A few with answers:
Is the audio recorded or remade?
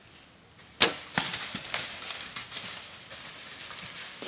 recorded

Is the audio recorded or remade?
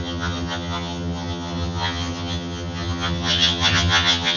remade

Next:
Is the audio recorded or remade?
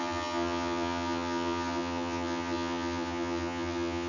remade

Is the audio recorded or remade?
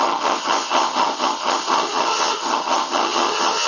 remade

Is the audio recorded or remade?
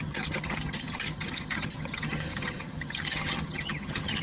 remade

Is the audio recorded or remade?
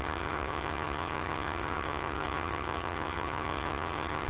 remade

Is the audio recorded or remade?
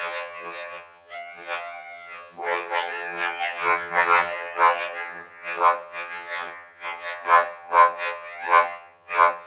remade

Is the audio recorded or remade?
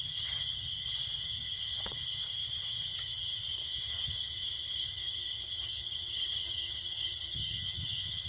remade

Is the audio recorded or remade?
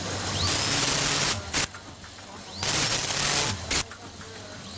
recorded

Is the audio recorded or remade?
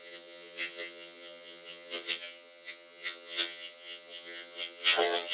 remade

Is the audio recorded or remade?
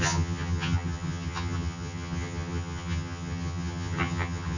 remade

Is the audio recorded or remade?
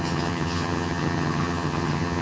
remade